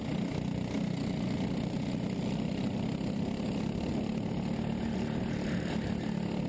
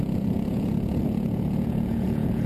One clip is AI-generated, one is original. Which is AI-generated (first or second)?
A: second